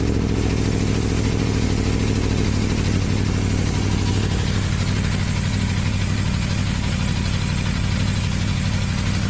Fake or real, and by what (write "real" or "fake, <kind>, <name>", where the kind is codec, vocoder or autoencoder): real